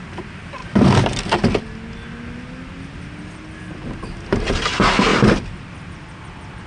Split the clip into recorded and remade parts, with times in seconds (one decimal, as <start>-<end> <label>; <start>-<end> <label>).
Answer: 0.0-0.6 recorded; 0.6-1.2 remade; 1.2-5.1 recorded; 5.1-5.7 remade; 5.7-6.7 recorded